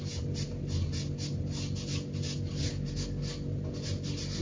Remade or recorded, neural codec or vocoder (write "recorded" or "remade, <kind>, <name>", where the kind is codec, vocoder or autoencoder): recorded